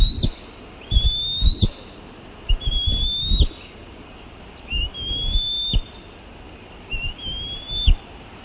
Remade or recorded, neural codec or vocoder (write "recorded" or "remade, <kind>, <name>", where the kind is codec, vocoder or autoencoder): recorded